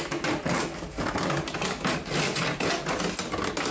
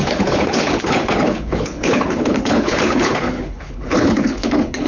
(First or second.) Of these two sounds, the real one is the first